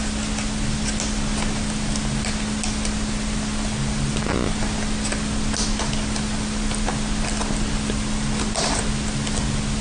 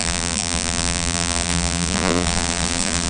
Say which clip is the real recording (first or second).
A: first